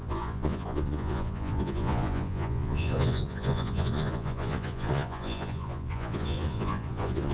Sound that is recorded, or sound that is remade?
remade